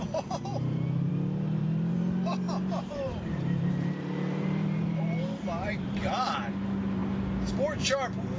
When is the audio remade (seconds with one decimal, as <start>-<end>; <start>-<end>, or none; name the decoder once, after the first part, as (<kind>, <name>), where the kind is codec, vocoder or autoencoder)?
0.5-1.1 (vocoder, BigVGAN v2); 1.6-6.5